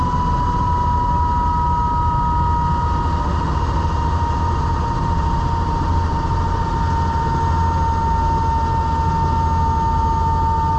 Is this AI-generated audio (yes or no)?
no